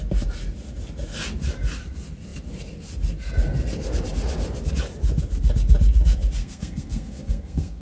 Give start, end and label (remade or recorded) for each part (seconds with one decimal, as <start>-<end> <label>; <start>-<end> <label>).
0.0-6.4 recorded; 6.4-7.8 remade